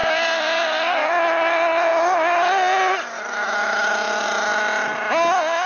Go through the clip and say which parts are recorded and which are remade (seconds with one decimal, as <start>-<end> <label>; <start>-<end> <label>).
0.0-1.1 remade; 1.1-5.7 recorded